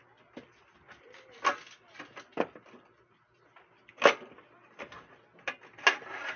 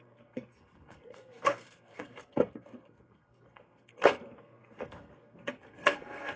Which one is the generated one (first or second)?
second